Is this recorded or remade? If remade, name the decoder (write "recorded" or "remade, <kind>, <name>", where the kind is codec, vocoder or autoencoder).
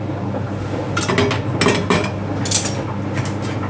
recorded